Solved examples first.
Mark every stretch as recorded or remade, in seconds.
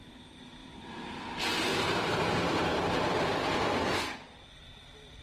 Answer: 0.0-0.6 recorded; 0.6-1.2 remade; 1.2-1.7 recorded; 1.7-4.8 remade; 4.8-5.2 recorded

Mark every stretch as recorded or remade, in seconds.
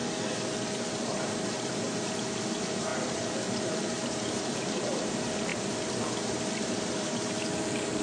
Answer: 0.0-0.9 recorded; 0.9-8.0 remade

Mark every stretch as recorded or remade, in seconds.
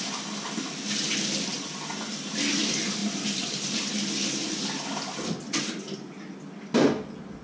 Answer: 0.0-3.0 recorded; 3.0-3.9 remade; 3.9-7.4 recorded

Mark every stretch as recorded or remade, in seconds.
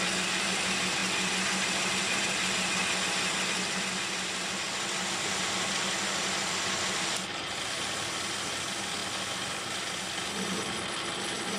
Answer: 0.0-11.6 recorded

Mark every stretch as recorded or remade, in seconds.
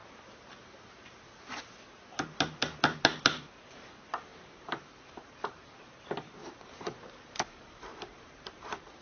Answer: 0.0-1.6 remade; 1.6-4.3 recorded; 4.3-5.8 remade; 5.8-6.4 recorded; 6.4-9.0 remade